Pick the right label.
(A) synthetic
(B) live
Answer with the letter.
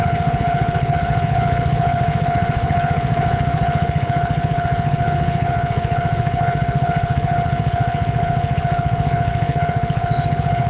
A